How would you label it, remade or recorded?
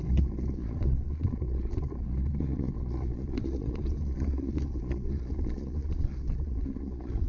remade